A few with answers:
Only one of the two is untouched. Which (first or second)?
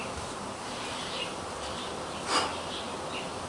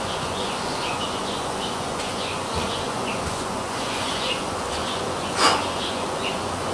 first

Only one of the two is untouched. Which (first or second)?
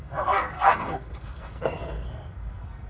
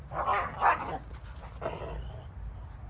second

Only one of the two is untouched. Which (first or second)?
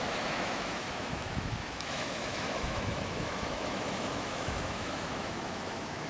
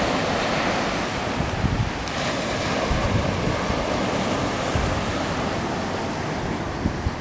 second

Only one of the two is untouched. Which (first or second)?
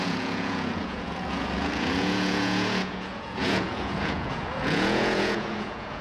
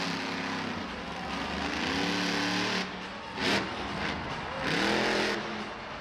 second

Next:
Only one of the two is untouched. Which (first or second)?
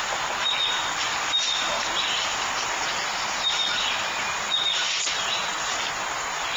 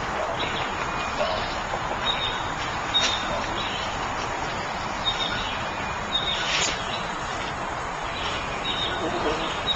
second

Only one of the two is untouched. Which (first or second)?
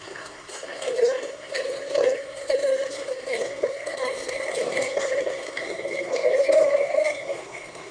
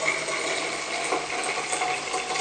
second